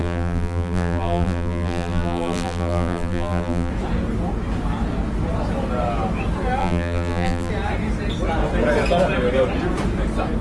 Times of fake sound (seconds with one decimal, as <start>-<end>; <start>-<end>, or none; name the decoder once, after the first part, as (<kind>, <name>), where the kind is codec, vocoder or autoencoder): 0.0-3.7 (vocoder, BigVGAN v2); 6.6-7.5